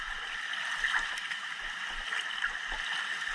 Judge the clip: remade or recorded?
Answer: recorded